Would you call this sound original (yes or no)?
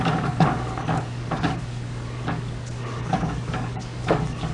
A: no